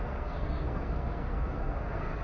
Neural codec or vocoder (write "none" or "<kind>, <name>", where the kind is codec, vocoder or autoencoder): codec, SNAC